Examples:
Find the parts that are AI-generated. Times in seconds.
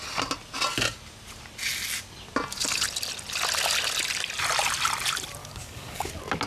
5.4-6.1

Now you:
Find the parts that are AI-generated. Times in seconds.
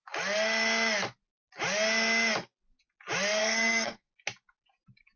3.4-4.1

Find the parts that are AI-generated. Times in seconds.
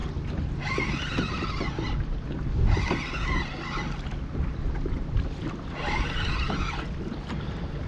none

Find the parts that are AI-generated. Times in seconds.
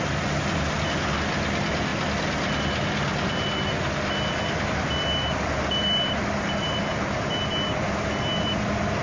none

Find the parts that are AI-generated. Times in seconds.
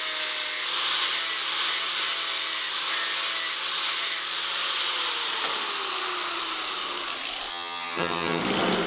7.5-8.4